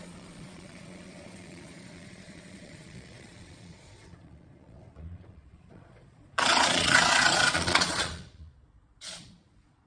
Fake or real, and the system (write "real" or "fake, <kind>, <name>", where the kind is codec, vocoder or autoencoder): fake, vocoder, Vocos